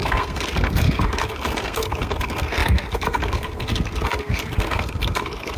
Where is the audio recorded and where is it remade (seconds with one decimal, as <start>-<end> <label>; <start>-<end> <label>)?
0.0-5.6 remade